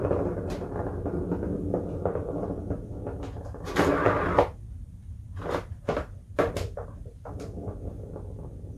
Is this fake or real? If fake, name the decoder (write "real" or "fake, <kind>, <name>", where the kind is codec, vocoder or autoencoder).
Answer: real